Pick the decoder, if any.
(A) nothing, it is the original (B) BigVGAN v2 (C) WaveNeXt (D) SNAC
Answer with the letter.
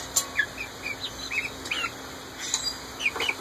A